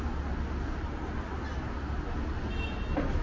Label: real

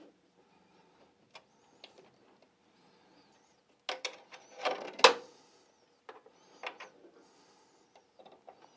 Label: real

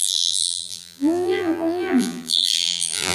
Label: fake